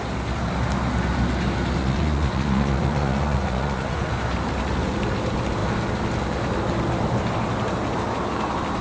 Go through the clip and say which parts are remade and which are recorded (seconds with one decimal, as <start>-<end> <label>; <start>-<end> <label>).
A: 0.0-1.8 recorded; 1.8-4.1 remade; 4.1-8.8 recorded